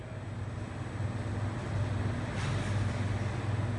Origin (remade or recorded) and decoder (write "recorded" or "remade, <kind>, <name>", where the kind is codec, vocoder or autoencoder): recorded